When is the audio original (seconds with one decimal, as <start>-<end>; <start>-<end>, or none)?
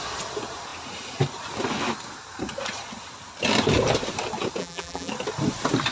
0.0-4.6; 5.1-5.9